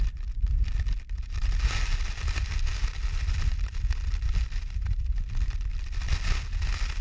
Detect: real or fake real